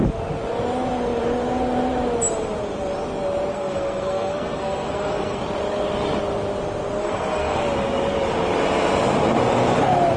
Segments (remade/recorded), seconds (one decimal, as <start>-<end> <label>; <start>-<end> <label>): 0.0-3.5 recorded; 3.5-5.4 remade; 5.4-7.0 recorded; 7.0-7.6 remade; 7.6-10.2 recorded